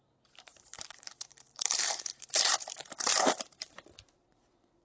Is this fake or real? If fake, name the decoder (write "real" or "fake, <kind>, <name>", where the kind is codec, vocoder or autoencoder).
fake, vocoder, BigVGAN v2